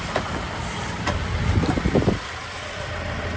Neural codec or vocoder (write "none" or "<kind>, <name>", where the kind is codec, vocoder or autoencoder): vocoder, BigVGAN v2